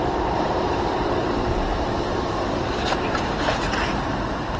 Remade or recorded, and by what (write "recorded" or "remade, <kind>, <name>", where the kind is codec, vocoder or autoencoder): remade, vocoder, BigVGAN v2